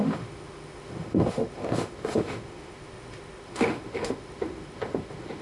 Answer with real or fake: fake